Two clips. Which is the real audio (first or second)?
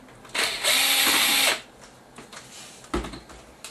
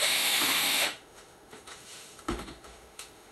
first